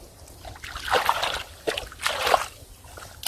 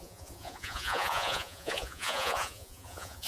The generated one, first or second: second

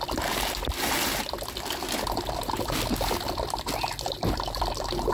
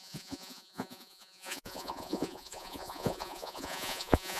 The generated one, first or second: second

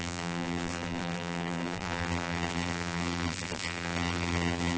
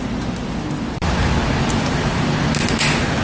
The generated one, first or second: first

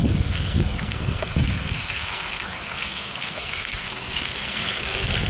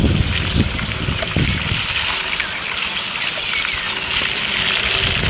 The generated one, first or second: first